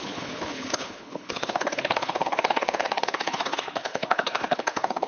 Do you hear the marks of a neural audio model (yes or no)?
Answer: yes